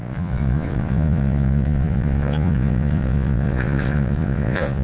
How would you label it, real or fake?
fake